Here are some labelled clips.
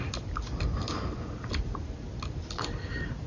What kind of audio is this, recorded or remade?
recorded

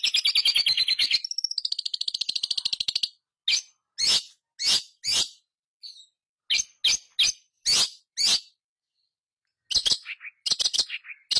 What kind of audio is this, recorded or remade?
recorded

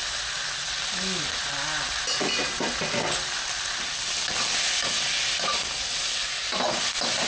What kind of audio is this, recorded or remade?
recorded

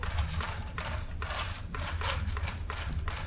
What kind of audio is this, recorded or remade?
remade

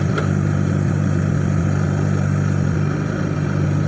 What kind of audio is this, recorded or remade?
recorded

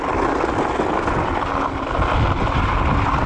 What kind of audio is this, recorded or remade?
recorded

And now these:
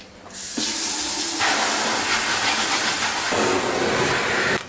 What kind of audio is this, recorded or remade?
recorded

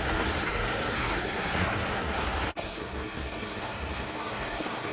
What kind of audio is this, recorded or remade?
remade